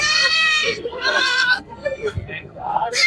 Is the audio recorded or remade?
remade